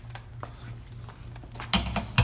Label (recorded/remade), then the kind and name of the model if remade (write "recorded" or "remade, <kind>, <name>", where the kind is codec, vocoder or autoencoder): recorded